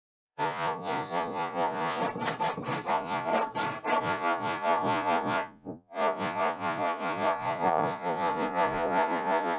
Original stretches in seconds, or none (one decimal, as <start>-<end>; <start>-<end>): 2.0-2.9; 3.3-4.0